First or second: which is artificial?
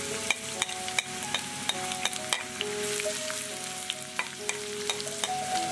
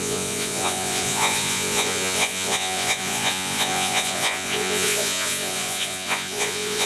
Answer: second